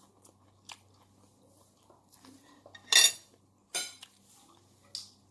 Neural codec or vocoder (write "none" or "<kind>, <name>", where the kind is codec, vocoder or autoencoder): none